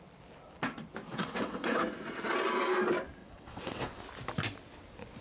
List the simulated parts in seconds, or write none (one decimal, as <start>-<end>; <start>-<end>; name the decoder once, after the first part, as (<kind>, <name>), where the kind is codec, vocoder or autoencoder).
1.1-1.8 (vocoder, WaveNeXt); 3.2-4.0